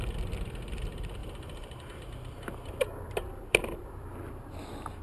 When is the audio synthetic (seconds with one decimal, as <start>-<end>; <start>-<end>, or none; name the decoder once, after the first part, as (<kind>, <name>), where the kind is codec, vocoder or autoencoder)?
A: 1.2-4.2 (vocoder, BigVGAN v2)